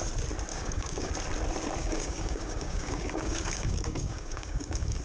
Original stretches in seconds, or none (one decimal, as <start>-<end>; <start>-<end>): 0.0-0.5; 1.1-1.8